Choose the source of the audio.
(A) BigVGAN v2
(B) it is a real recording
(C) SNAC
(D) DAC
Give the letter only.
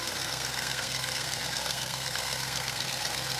C